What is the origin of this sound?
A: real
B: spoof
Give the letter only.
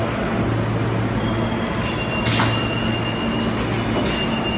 A